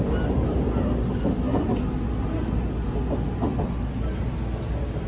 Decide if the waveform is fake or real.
real